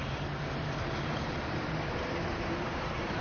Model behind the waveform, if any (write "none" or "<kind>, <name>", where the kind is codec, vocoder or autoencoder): vocoder, BigVGAN v2